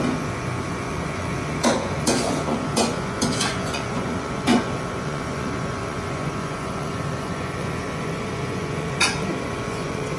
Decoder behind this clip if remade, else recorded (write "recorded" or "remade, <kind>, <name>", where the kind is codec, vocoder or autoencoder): remade, vocoder, Vocos